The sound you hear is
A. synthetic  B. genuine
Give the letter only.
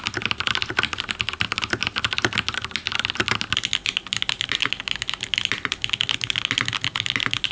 B